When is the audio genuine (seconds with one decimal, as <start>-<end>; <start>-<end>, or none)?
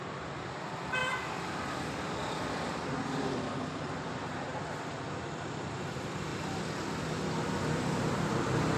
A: 4.5-5.5; 6.3-7.0